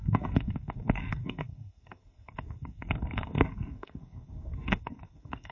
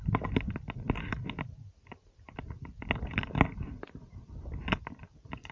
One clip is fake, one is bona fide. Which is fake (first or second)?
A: first